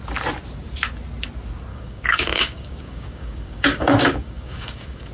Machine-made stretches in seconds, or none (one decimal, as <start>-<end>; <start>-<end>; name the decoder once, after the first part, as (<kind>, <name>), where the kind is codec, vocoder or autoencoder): 1.7-5.1 (codec, DAC)